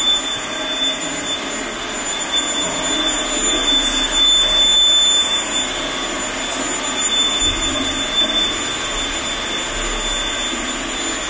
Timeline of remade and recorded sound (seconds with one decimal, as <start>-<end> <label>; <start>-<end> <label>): 0.0-11.3 recorded